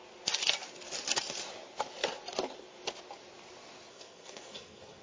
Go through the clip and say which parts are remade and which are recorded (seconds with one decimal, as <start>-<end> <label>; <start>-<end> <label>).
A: 0.0-3.9 recorded; 3.9-5.0 remade